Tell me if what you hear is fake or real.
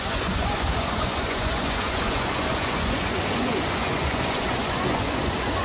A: fake